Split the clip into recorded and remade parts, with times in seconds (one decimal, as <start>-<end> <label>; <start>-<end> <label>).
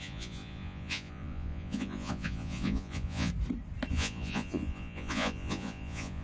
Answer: 0.0-3.3 remade; 3.3-3.9 recorded; 3.9-6.2 remade